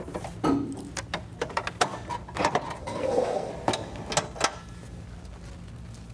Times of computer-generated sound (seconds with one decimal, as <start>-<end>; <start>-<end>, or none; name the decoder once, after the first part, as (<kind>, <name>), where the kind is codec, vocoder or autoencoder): 2.8-3.5 (codec, SNAC)

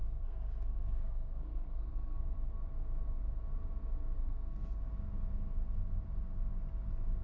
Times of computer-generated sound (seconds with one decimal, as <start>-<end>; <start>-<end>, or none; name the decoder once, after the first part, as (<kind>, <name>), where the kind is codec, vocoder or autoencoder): 0.0-2.2 (codec, SNAC); 4.2-4.8

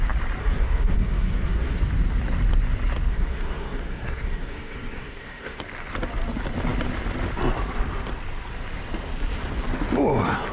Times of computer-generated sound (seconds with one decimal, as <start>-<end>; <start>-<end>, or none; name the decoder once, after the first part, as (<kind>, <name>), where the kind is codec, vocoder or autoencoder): 0.4-1.8 (codec, SNAC); 3.1-5.6

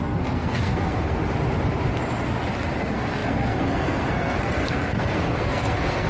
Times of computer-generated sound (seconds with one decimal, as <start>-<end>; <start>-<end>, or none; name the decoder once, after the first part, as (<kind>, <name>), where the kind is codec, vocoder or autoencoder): 0.0-1.2 (codec, SNAC); 2.8-6.1

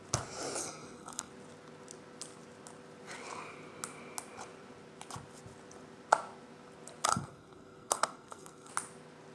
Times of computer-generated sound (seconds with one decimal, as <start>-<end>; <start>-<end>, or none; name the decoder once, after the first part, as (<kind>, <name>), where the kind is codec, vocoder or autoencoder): 0.6-1.3 (codec, SNAC); 7.1-8.7

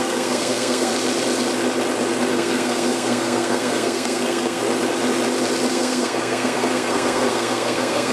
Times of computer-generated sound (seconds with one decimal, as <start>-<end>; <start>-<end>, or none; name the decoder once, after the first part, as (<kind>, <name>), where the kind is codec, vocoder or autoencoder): 0.0-0.9 (codec, SNAC); 2.3-4.6; 5.7-8.1

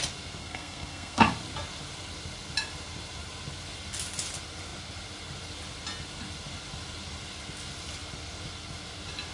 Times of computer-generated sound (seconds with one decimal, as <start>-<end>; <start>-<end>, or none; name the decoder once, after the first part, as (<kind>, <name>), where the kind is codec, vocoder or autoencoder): 0.4-1.3 (codec, SNAC)